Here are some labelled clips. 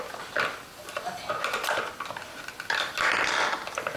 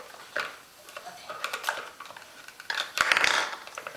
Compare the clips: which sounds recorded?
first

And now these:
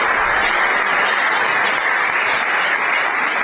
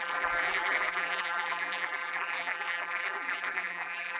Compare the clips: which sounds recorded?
first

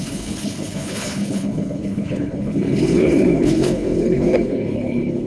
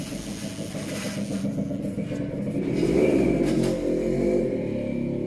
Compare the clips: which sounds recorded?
second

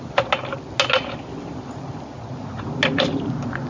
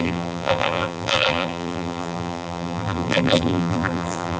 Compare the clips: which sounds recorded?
first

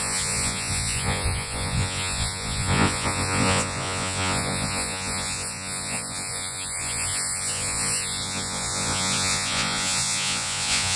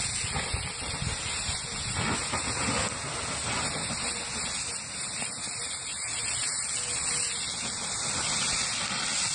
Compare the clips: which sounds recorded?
second